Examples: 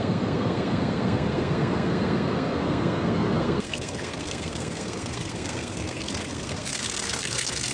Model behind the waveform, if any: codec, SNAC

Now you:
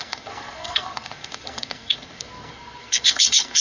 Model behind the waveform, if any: codec, SNAC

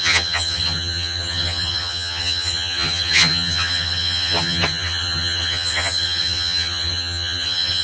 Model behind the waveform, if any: vocoder, HiFi-GAN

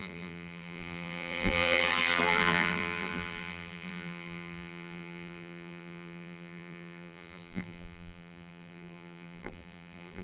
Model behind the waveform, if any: vocoder, BigVGAN v2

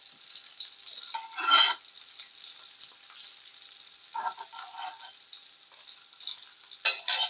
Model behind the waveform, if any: none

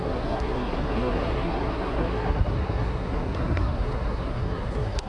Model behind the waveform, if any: codec, SNAC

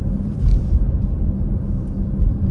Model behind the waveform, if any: vocoder, BigVGAN v2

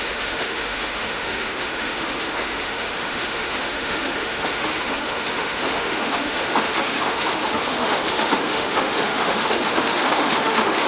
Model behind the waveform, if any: autoencoder, DAC-VAE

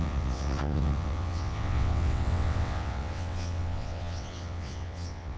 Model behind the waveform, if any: vocoder, WaveNeXt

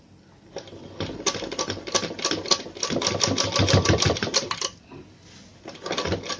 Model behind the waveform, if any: none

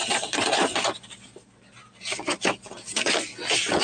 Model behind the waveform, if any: none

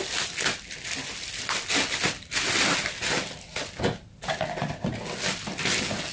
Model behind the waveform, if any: none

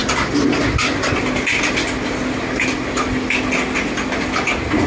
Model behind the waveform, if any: none